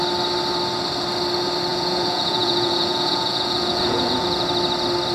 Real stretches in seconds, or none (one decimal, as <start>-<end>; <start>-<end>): 0.0-1.7; 4.4-5.1